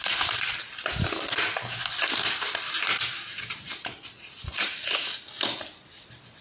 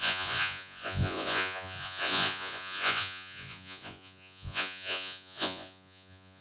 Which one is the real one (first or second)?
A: first